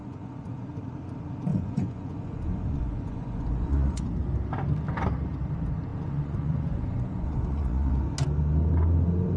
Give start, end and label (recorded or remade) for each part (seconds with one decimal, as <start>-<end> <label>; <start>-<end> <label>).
0.0-0.6 remade; 0.6-1.5 recorded; 1.5-4.1 remade; 4.1-5.9 recorded; 5.9-7.9 remade; 7.9-9.4 recorded